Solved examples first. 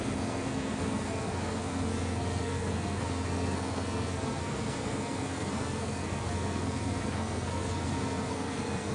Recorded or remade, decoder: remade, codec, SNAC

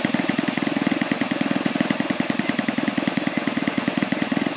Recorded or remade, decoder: remade, vocoder, Vocos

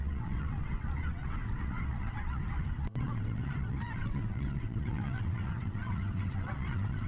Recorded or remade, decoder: remade, vocoder, WaveNeXt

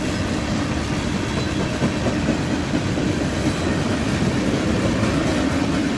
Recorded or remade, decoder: recorded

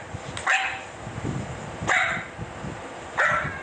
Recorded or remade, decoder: recorded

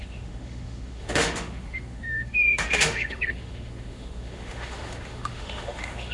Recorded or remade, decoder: remade, autoencoder, DAC-VAE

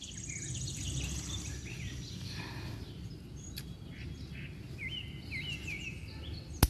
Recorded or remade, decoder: recorded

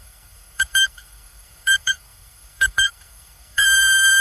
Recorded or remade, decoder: remade, codec, SNAC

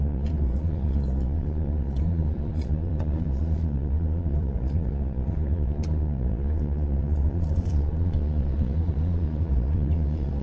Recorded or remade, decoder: remade, vocoder, Vocos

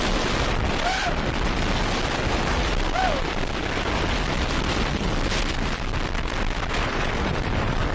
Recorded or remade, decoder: recorded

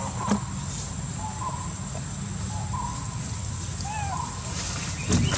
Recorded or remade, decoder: recorded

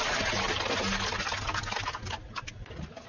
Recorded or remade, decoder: recorded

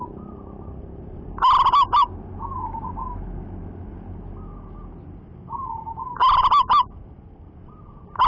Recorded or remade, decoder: recorded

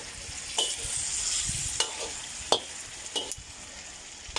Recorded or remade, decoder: recorded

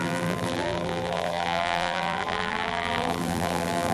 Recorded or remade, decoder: remade, vocoder, BigVGAN v2